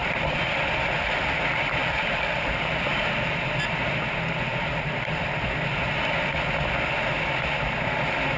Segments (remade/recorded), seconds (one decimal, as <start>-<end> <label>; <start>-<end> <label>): 0.0-0.6 remade; 0.6-1.8 recorded; 1.8-3.6 remade; 3.6-4.5 recorded; 4.5-5.5 remade; 5.5-8.4 recorded